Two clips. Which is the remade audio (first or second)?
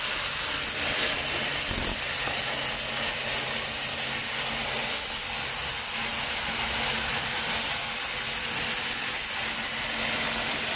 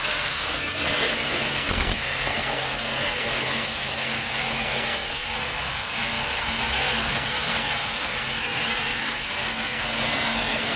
second